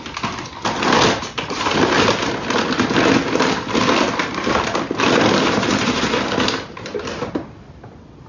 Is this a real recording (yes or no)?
yes